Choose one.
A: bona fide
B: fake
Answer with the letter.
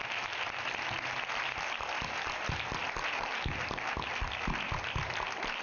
A